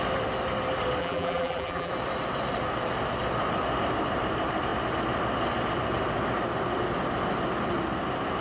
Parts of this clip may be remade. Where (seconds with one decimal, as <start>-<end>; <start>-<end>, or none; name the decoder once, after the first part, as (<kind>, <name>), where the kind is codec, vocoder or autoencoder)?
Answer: 1.0-1.9 (vocoder, BigVGAN v2)